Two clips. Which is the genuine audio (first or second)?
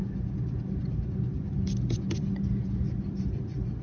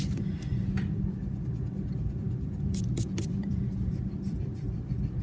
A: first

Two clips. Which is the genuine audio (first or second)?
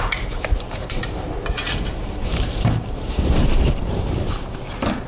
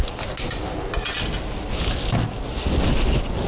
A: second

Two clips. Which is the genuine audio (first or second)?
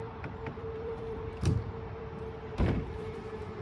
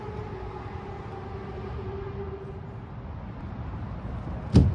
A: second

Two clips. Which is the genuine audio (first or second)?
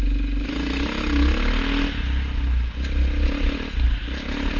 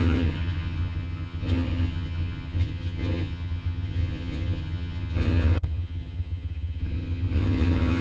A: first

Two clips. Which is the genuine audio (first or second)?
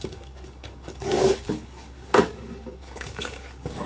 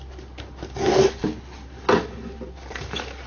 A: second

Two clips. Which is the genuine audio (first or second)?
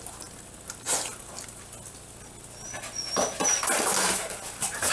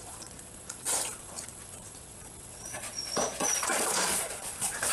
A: first